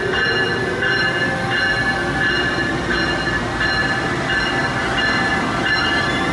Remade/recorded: recorded